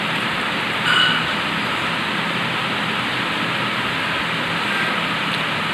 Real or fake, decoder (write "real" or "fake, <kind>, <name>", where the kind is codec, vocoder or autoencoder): real